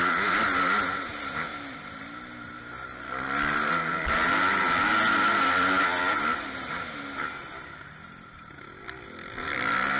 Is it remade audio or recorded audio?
recorded